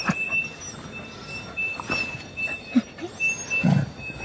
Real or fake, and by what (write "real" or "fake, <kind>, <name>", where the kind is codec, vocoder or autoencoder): real